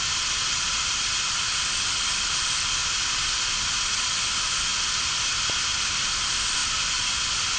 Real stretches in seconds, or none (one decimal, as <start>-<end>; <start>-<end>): 2.8-3.8; 4.7-5.8; 6.6-7.6